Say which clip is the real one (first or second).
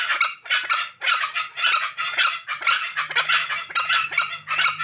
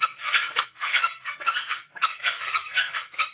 first